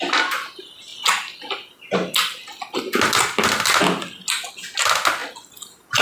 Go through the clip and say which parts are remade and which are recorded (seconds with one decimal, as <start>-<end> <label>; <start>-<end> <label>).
0.0-6.0 recorded

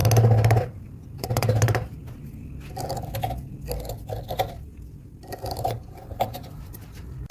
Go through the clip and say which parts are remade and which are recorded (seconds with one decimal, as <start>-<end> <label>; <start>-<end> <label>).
0.0-0.6 recorded; 0.6-2.0 remade; 2.0-5.5 recorded; 5.5-7.3 remade

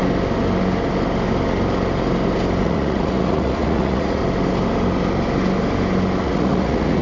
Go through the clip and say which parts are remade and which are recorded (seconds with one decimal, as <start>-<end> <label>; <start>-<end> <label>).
0.0-2.6 recorded; 2.6-4.2 remade; 4.2-6.2 recorded; 6.2-7.0 remade

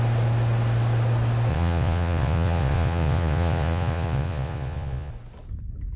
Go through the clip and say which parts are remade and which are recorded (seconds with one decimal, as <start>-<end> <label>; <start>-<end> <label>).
0.0-1.5 recorded; 1.5-5.1 remade; 5.1-6.0 recorded

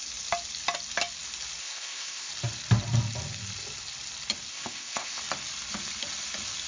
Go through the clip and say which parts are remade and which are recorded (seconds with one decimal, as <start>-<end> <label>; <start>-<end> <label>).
0.0-1.6 recorded; 1.6-2.3 remade; 2.3-4.5 recorded; 4.5-5.2 remade; 5.2-6.7 recorded

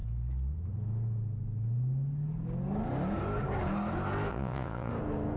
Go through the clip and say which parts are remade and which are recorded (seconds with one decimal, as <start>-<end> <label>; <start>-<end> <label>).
0.0-4.3 recorded; 4.3-4.9 remade; 4.9-5.4 recorded